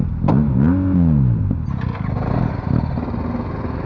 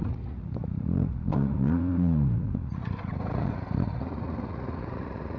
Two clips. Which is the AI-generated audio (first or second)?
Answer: second